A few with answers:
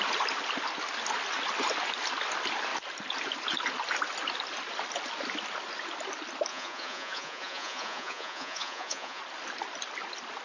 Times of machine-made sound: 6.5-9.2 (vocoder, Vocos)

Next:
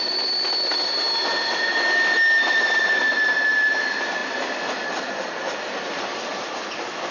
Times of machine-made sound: none

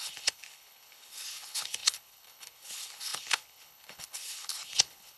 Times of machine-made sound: 0.0-5.2 (codec, HILCodec)

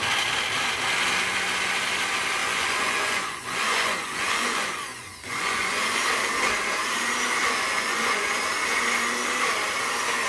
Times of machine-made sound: 2.4-6.0 (vocoder, Vocos); 7.4-8.4

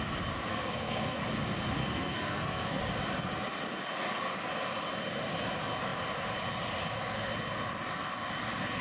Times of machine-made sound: 0.5-1.2 (codec, SNAC); 1.8-2.8

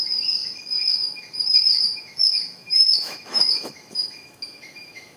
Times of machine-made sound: 0.0-5.2 (autoencoder, DAC-VAE)

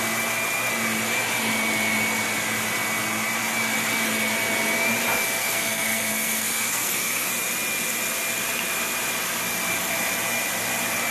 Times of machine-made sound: 5.4-7.3 (codec, SNAC)

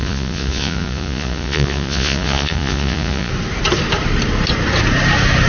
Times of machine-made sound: 0.0-3.3 (vocoder, Vocos)